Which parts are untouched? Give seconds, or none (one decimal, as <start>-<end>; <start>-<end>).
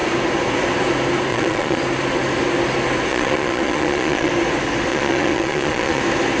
0.0-1.3; 1.8-3.1; 4.3-4.9; 6.0-6.4